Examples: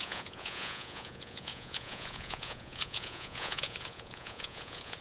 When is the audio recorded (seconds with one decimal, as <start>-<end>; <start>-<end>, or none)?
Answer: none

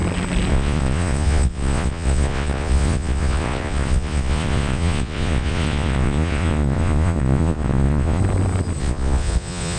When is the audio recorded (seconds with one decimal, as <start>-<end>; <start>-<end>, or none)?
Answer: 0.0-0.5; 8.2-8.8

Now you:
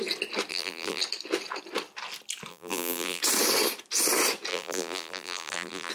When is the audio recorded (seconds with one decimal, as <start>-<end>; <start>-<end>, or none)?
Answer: 0.0-0.5; 1.0-2.5; 3.2-4.5

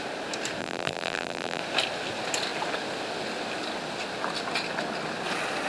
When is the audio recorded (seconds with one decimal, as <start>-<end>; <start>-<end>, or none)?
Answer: 0.0-0.6; 1.6-5.7

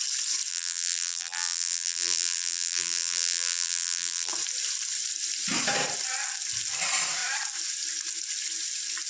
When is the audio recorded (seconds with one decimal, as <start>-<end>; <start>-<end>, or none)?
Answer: 0.0-0.5; 4.3-9.1

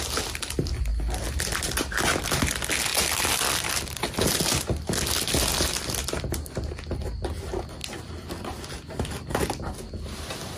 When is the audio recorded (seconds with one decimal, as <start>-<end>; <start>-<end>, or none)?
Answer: 0.0-10.6

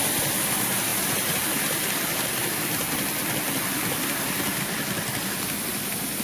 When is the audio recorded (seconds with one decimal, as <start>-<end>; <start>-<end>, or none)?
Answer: 0.0-0.9; 4.6-6.2

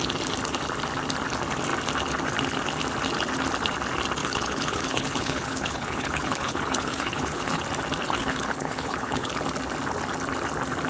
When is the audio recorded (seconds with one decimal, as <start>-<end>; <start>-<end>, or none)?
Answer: 0.0-4.2; 7.6-8.2; 9.3-10.9